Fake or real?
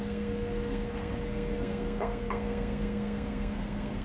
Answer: fake